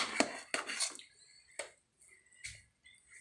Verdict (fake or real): real